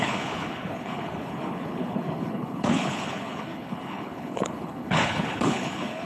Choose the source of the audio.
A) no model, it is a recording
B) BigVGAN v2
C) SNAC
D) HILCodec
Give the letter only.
D